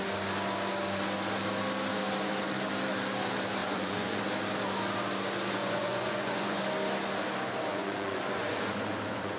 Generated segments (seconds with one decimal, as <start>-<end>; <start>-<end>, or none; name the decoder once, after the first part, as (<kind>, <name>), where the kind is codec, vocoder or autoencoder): 3.6-4.2 (vocoder, Vocos); 5.6-6.6; 7.7-9.4

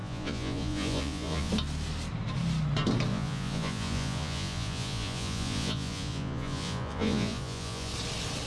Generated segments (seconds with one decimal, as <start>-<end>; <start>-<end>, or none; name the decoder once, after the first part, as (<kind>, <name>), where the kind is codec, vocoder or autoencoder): 0.0-1.5 (vocoder, Vocos); 3.1-7.9

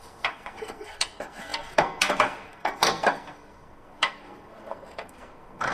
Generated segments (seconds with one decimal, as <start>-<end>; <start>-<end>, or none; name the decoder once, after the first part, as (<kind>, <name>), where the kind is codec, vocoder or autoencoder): 0.0-5.7 (codec, SNAC)

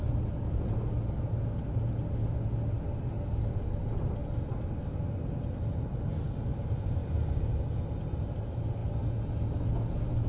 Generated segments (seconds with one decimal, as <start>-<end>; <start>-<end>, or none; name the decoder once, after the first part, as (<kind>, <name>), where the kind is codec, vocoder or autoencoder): none

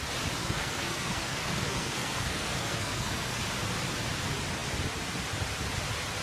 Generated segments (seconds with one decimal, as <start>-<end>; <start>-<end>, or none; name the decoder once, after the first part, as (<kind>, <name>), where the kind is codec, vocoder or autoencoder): 0.4-3.4 (codec, SNAC)

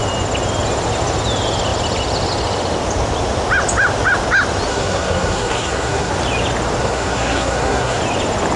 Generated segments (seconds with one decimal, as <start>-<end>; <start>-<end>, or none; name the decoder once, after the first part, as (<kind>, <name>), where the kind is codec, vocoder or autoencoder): 4.7-6.1 (codec, SNAC); 6.8-8.0

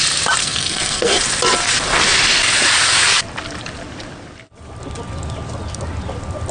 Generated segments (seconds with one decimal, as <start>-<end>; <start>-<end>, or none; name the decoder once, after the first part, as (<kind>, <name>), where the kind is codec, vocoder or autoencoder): 0.4-1.2 (codec, SNAC)